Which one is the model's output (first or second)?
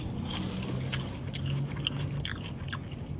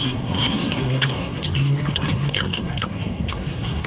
second